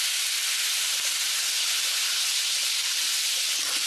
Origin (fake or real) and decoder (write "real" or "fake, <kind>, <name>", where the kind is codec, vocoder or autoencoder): real